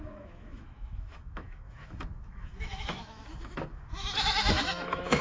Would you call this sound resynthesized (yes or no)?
yes